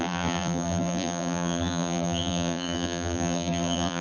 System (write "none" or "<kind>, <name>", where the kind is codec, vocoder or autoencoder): vocoder, BigVGAN v2